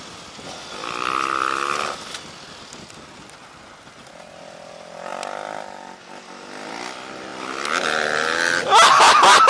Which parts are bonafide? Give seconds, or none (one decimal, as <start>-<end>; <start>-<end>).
0.0-9.5